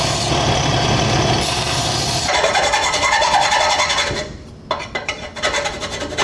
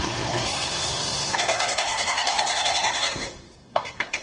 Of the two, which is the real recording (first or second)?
first